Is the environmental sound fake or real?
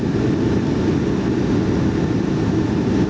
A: real